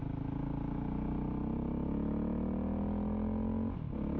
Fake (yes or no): no